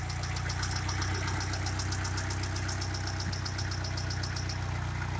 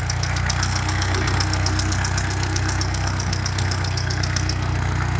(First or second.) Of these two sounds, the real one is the first